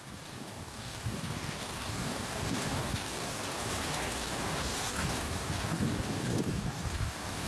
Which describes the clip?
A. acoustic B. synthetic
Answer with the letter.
B